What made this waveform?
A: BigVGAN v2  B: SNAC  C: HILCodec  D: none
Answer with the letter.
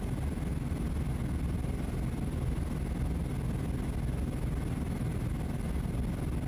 D